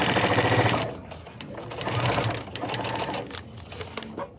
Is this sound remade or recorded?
recorded